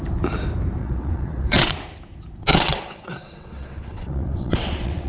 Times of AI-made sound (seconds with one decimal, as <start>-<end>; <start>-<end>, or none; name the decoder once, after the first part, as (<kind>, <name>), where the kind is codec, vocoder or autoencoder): 0.8-1.7 (vocoder, WaveNeXt); 2.5-5.1